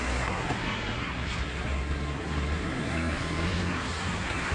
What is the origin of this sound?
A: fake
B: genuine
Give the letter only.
A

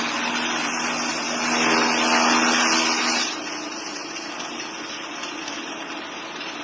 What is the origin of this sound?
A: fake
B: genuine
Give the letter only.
B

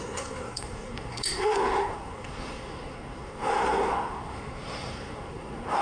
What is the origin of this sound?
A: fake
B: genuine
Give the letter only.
A